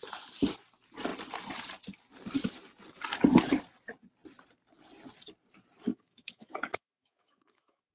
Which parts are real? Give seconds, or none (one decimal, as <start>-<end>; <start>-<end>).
0.0-5.9